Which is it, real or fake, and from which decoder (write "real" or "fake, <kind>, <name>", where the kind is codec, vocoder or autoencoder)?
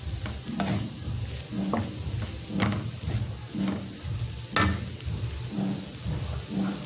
real